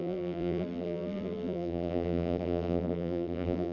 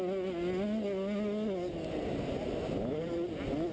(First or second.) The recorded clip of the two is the second